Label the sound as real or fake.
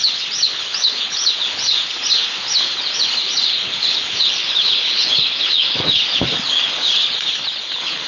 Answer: fake